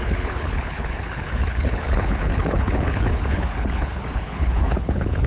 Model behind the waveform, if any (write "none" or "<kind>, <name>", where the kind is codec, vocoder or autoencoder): codec, HILCodec